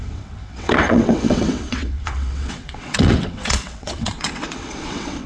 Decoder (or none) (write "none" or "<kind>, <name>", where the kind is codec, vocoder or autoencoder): vocoder, WaveNeXt